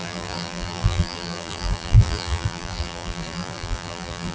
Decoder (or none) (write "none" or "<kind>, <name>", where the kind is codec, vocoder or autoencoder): vocoder, BigVGAN v2